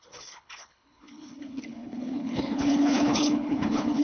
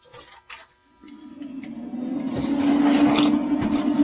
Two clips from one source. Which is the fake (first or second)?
first